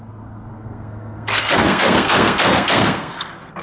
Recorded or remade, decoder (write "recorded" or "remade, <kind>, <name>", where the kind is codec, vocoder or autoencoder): remade, codec, SNAC